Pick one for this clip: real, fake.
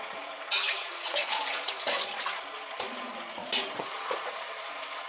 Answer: fake